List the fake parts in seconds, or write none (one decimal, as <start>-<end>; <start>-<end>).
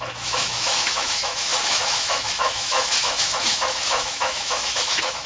0.0-5.3